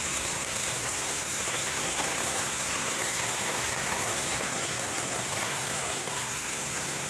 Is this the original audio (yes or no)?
no